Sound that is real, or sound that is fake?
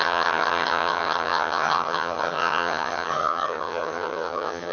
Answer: fake